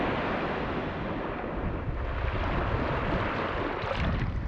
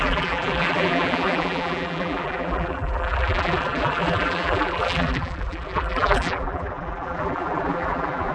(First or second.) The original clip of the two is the first